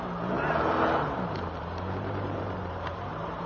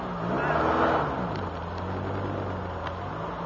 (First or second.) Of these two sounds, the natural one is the second